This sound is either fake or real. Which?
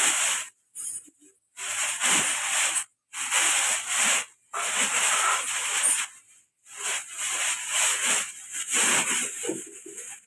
real